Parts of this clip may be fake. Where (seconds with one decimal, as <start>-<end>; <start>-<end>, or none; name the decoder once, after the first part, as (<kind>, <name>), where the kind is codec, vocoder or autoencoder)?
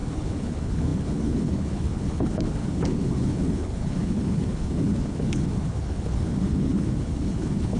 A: 0.0-7.8 (codec, HILCodec)